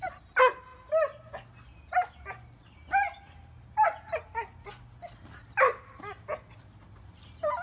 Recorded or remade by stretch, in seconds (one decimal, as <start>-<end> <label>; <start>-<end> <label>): 0.0-7.6 recorded